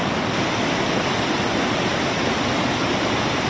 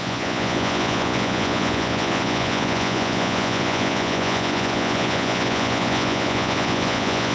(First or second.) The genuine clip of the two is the first